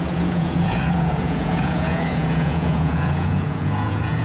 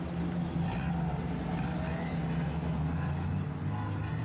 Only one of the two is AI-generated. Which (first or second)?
first